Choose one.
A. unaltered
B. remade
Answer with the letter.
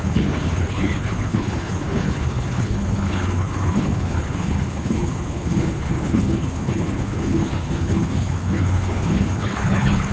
B